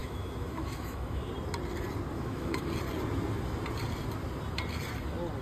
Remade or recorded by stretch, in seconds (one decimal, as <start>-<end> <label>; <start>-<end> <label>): 0.0-1.3 remade; 1.3-2.1 recorded; 2.1-2.7 remade; 2.7-5.4 recorded